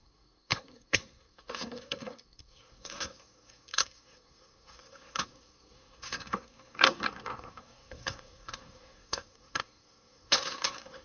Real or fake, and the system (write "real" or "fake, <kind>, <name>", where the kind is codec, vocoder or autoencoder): fake, codec, SNAC